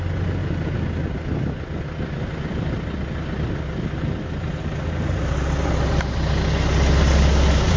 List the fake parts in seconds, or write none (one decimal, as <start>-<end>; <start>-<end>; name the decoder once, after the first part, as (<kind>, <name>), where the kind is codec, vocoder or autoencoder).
none